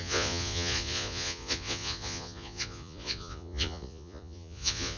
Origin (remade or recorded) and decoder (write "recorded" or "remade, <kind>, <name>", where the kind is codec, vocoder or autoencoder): remade, vocoder, Vocos